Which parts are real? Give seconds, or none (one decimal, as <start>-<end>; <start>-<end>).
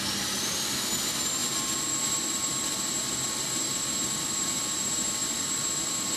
none